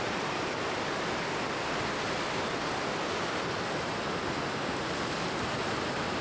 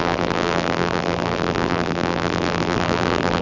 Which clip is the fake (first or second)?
second